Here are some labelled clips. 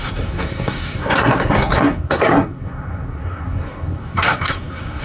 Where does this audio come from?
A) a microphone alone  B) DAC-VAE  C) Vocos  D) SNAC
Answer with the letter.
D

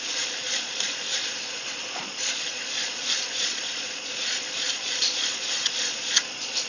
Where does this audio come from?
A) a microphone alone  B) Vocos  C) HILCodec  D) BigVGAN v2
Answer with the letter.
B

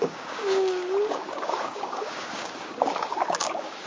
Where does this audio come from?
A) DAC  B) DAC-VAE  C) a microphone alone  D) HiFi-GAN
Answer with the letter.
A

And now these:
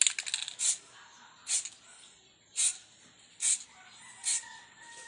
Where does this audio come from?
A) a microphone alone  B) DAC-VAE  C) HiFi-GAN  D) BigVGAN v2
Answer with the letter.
A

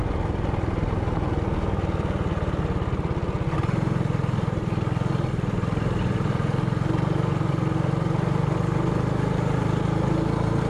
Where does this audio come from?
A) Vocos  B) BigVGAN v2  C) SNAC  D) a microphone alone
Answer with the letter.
D